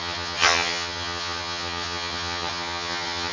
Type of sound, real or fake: fake